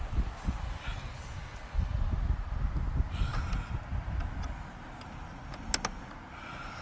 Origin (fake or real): real